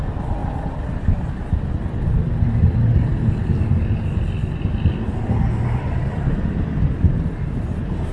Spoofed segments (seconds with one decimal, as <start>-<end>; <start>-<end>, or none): none